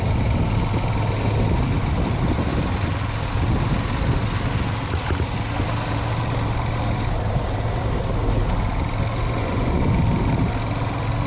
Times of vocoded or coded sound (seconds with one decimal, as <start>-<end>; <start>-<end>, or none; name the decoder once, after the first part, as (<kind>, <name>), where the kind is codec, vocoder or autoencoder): 9.4-10.0 (vocoder, Vocos)